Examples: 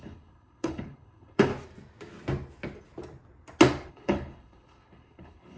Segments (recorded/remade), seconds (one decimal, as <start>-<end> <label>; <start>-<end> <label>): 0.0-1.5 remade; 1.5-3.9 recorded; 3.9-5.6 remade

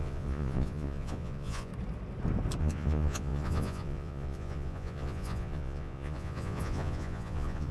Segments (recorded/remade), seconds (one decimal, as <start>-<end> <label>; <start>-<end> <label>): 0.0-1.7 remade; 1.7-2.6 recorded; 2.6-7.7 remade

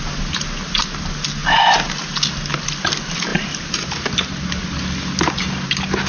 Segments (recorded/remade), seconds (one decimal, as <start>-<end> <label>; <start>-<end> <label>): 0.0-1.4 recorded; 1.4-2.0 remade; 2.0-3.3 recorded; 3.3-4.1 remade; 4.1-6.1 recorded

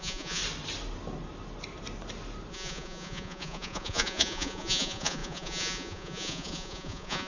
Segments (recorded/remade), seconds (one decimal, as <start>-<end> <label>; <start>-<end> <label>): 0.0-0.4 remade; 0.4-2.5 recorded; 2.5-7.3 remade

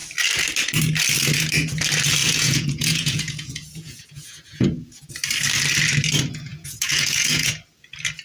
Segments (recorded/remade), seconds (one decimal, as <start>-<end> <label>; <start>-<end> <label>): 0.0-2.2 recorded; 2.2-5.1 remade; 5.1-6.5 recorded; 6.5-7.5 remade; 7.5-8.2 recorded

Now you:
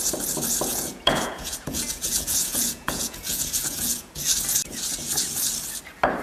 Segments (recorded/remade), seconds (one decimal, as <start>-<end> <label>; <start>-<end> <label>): 0.0-0.7 recorded; 0.7-4.1 remade; 4.1-6.2 recorded

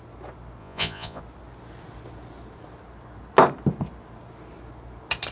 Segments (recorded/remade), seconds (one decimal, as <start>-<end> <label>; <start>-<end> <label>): 0.0-0.6 recorded; 0.6-1.2 remade; 1.2-5.3 recorded

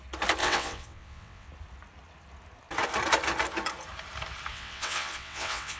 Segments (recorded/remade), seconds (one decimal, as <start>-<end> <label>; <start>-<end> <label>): 0.0-0.4 recorded; 0.4-1.5 remade; 1.5-4.5 recorded; 4.5-5.8 remade